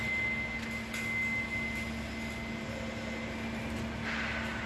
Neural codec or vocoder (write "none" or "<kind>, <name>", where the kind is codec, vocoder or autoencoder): none